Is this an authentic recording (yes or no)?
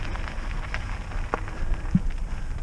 yes